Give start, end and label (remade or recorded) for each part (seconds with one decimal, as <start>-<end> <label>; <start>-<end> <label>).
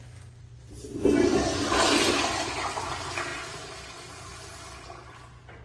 0.0-5.6 recorded